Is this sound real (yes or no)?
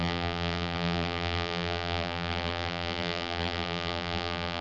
no